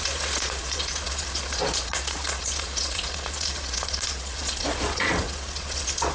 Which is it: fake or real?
fake